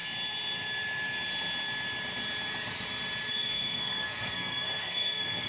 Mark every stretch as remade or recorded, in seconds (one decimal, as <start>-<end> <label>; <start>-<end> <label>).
0.0-3.3 recorded; 3.3-5.5 remade